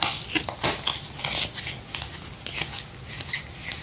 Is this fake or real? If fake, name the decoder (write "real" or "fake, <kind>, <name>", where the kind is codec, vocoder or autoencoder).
real